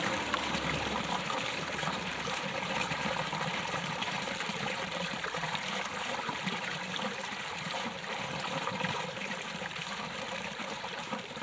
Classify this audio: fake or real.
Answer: fake